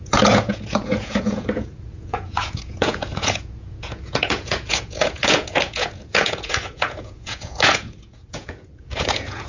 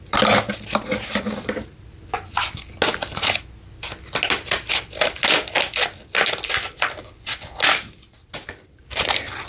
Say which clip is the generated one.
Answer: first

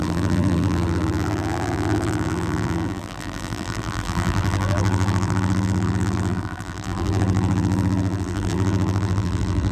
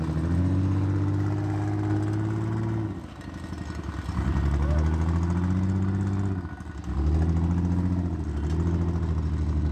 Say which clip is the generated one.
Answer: first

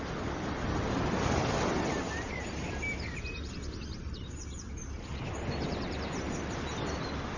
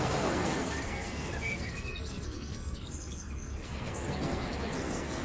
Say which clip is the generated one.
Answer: second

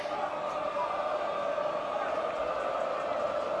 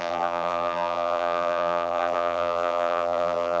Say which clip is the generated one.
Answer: second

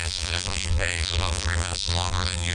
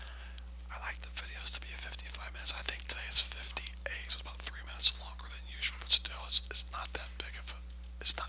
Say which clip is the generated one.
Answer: first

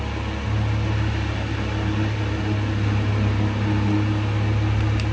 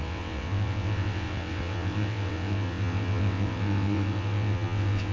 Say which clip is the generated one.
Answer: second